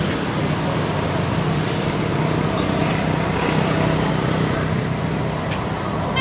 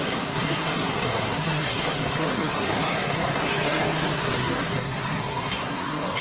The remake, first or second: second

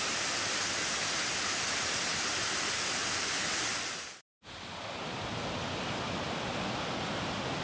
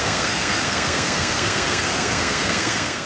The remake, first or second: second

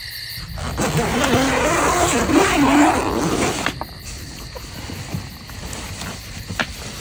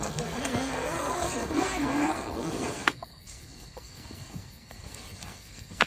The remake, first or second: second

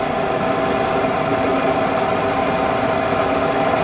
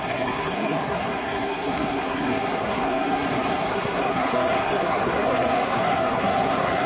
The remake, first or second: second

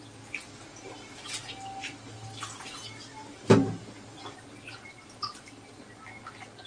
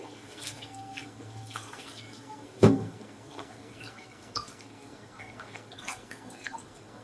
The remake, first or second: second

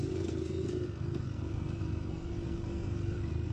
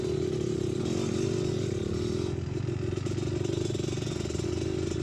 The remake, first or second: first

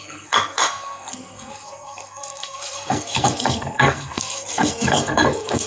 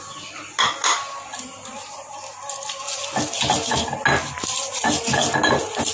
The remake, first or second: first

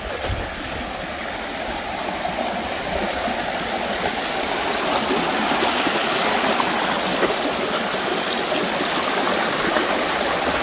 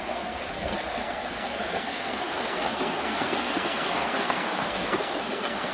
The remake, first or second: second